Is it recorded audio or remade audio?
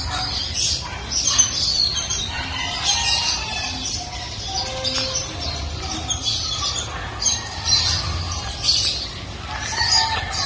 recorded